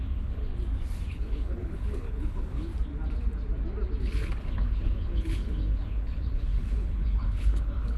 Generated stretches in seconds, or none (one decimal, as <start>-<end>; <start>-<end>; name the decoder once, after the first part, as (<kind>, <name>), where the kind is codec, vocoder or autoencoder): 0.0-0.5 (codec, HILCodec); 1.1-2.7; 4.0-8.0